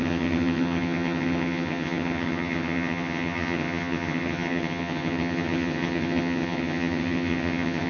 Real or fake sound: fake